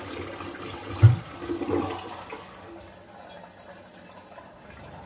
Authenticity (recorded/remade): remade